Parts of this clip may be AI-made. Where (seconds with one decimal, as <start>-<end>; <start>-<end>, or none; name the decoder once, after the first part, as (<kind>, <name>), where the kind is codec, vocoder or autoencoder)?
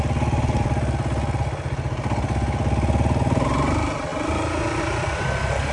none